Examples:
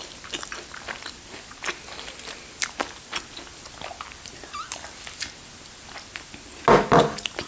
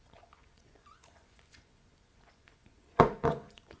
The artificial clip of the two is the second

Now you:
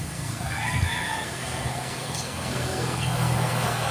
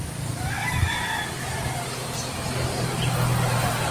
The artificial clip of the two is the first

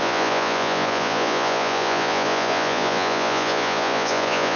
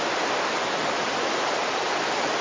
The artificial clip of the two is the first